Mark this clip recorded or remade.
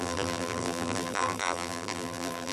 remade